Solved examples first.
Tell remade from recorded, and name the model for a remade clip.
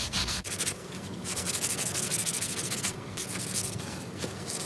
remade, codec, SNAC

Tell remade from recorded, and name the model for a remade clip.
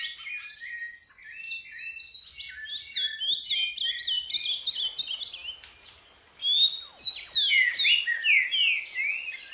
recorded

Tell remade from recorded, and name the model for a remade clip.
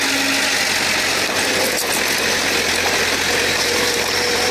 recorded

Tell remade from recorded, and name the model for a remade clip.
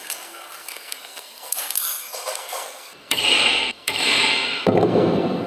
remade, codec, SNAC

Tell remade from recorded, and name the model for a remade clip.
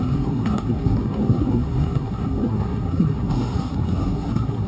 remade, codec, SNAC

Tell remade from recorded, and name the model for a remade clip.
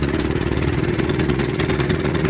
remade, vocoder, Vocos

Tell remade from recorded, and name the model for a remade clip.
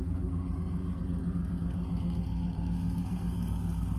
remade, codec, SNAC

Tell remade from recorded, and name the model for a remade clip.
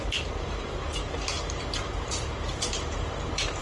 remade, vocoder, BigVGAN v2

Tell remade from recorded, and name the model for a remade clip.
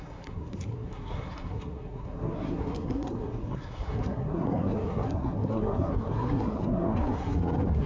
remade, codec, SNAC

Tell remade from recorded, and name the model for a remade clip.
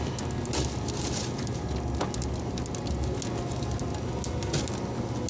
recorded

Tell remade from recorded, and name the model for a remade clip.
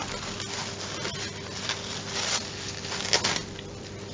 recorded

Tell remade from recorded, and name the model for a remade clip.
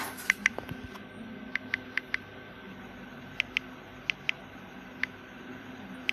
recorded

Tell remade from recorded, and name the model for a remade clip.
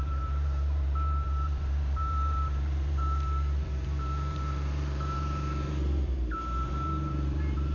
remade, vocoder, BigVGAN v2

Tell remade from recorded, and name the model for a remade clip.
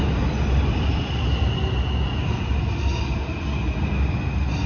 recorded